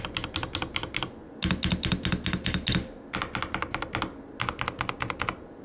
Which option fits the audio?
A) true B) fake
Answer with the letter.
A